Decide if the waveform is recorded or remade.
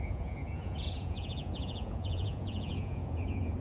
remade